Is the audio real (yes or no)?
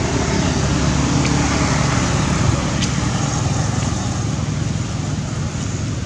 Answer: yes